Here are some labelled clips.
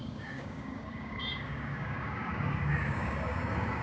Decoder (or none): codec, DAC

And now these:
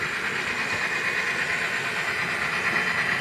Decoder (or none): none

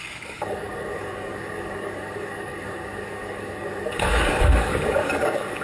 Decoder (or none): codec, DAC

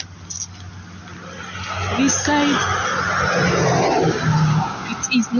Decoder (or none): none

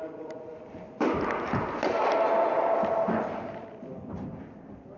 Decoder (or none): none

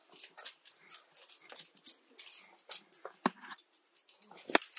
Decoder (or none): none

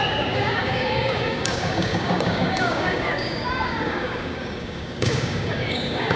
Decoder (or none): codec, DAC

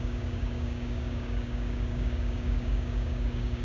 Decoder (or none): codec, DAC